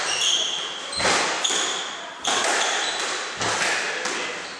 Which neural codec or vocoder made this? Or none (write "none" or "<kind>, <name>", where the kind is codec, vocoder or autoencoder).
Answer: none